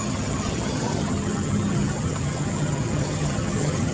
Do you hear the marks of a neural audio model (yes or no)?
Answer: yes